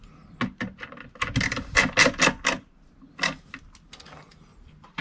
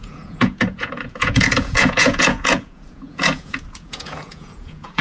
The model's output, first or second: second